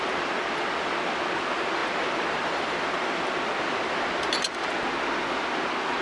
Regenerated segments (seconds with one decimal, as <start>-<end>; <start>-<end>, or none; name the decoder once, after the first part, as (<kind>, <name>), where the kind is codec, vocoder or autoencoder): none